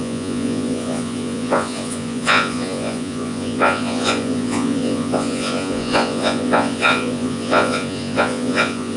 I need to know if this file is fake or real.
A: fake